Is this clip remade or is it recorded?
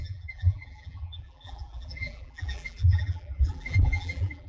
remade